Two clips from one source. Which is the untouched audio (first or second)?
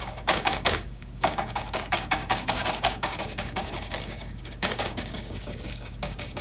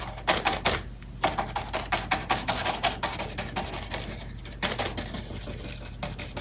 second